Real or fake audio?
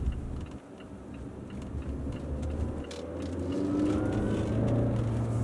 real